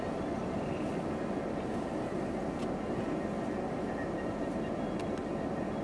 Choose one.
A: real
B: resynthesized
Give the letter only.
A